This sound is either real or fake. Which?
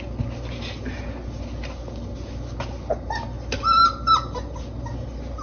real